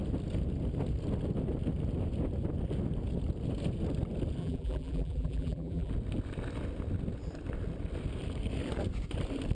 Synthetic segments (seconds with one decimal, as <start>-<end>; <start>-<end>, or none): 4.4-5.9